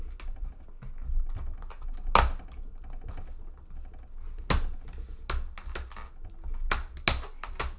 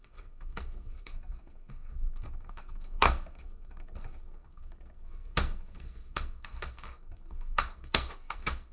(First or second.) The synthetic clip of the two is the second